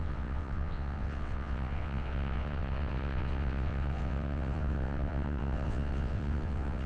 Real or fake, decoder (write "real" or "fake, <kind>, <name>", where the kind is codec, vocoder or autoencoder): fake, vocoder, WaveNeXt